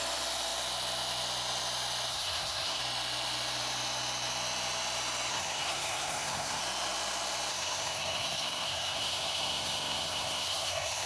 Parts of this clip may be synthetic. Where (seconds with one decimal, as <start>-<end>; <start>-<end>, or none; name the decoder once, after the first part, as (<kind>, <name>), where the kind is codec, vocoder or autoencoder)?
2.1-2.8 (codec, SNAC); 5.3-6.6; 7.5-11.1